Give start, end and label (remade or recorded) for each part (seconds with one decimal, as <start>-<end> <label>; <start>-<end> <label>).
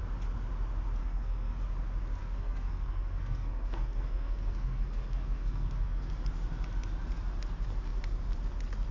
0.0-1.0 recorded; 1.0-1.6 remade; 1.6-2.2 recorded; 2.2-6.1 remade; 6.1-8.9 recorded